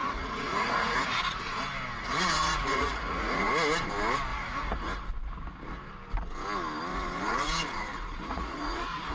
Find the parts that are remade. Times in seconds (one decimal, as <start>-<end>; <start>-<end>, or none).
0.0-1.6; 2.0-3.5; 4.3-4.9; 6.9-9.1